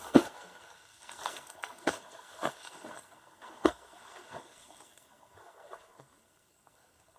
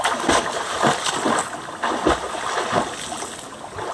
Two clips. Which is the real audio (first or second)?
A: second